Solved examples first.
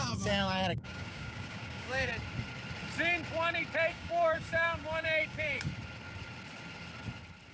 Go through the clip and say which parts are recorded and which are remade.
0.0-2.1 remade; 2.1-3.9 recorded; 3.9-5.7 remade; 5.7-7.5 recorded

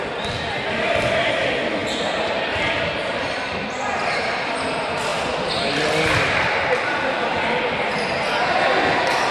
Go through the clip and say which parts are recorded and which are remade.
0.0-1.8 remade; 1.8-2.7 recorded; 2.7-5.1 remade; 5.1-7.6 recorded; 7.6-9.3 remade

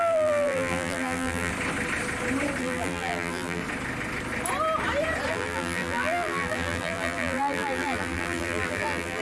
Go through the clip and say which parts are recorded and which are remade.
0.0-1.5 remade; 1.5-2.6 recorded; 2.6-3.6 remade; 3.6-5.3 recorded; 5.3-9.2 remade

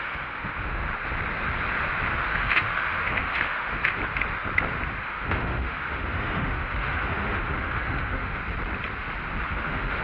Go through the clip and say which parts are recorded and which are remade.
0.0-0.9 remade; 0.9-2.1 recorded; 2.1-4.0 remade; 4.0-5.0 recorded; 5.0-8.4 remade; 8.4-9.5 recorded; 9.5-10.0 remade

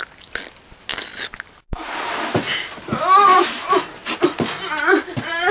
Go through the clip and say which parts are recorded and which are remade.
0.0-5.5 recorded

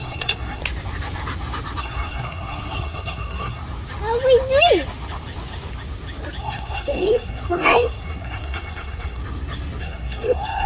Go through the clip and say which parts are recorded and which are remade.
0.0-0.6 remade; 0.6-1.8 recorded; 1.8-3.6 remade; 3.6-6.4 recorded; 6.4-9.2 remade; 9.2-9.8 recorded; 9.8-10.7 remade

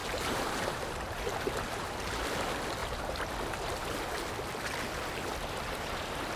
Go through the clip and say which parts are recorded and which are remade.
0.0-2.2 remade; 2.2-2.8 recorded; 2.8-3.3 remade; 3.3-6.4 recorded